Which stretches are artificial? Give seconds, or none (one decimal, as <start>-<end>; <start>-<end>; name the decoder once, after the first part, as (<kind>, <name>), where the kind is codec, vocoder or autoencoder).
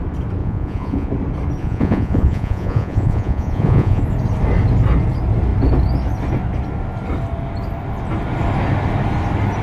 0.4-1.1 (vocoder, Vocos); 1.6-4.0